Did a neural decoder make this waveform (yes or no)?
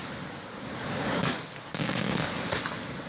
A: yes